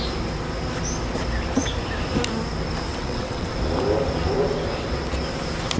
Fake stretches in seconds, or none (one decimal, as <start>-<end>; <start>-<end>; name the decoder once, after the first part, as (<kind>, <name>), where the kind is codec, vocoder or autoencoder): 2.9-3.5 (vocoder, WaveNeXt)